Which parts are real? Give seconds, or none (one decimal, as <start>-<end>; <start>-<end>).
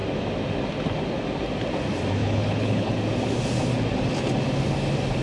0.0-2.2; 2.9-5.2